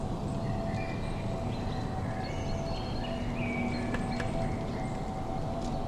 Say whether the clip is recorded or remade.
recorded